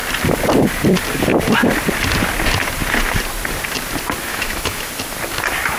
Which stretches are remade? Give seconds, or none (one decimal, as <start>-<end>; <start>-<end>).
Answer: 4.3-4.9